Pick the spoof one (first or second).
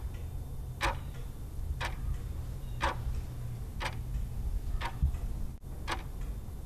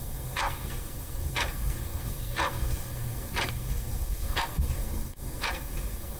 second